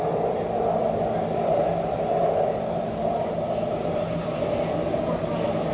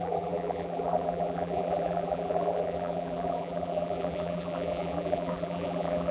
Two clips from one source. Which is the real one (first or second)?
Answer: first